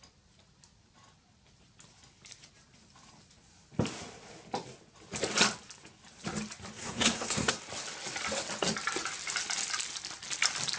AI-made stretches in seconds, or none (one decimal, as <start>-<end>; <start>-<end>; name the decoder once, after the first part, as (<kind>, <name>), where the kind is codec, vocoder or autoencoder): 6.8-7.6 (codec, SNAC)